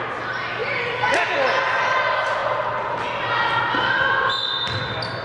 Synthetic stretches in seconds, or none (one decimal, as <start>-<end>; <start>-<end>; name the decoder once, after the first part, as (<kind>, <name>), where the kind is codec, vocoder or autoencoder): none